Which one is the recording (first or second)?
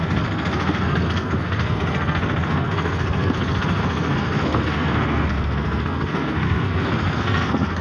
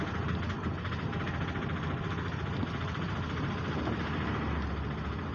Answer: second